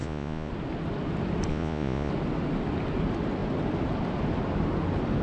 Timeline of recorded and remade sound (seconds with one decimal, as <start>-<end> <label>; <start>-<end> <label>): 0.0-0.5 remade; 0.5-1.5 recorded; 1.5-2.1 remade; 2.1-5.2 recorded